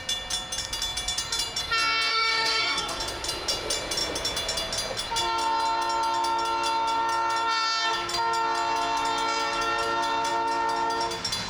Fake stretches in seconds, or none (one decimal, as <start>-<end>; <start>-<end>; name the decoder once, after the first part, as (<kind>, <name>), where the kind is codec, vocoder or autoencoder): 2.1-3.0 (codec, DAC)